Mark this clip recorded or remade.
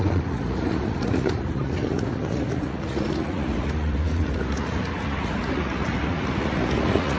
remade